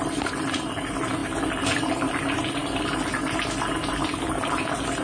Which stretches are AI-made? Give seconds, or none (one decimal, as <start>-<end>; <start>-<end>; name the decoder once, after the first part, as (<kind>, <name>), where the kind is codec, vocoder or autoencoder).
0.0-2.6 (vocoder, BigVGAN v2); 3.8-5.0